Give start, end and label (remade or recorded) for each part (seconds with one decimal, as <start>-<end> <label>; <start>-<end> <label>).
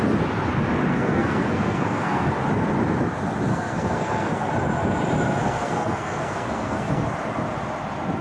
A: 0.0-0.9 recorded; 0.9-2.3 remade; 2.3-3.5 recorded; 3.5-4.5 remade; 4.5-5.4 recorded; 5.4-7.1 remade; 7.1-8.2 recorded